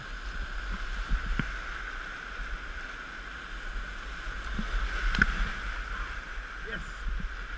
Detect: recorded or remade recorded